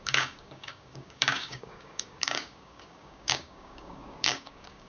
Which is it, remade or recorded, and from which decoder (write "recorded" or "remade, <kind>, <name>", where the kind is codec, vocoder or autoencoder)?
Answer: remade, codec, DAC